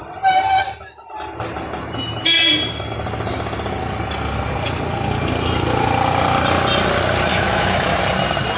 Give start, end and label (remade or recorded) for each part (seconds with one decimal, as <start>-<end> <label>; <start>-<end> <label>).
0.0-7.3 recorded; 7.3-8.0 remade; 8.0-8.6 recorded